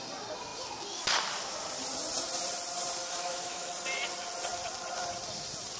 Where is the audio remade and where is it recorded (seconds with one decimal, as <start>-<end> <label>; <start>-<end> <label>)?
0.0-3.0 recorded; 3.0-3.7 remade; 3.7-5.8 recorded